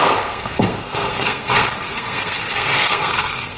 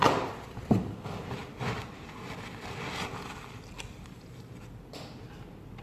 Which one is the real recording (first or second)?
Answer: second